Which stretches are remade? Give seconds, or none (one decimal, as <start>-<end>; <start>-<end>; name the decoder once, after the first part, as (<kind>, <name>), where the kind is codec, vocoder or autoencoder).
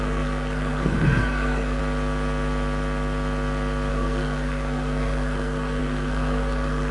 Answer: 0.0-1.8 (codec, SNAC); 3.9-6.9